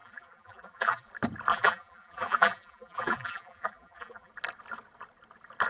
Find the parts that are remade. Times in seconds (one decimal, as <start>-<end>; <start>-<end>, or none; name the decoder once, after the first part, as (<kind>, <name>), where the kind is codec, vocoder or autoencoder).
0.0-1.1 (vocoder, BigVGAN v2); 1.5-4.3